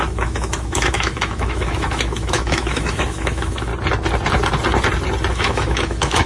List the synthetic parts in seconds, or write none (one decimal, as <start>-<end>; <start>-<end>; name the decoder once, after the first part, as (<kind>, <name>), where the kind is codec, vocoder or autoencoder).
0.0-3.7 (autoencoder, DAC-VAE); 5.3-6.3